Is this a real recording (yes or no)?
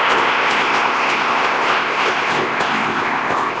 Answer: no